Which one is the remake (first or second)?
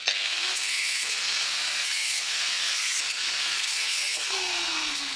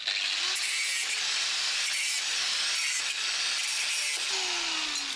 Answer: first